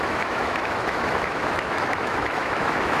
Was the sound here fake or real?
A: fake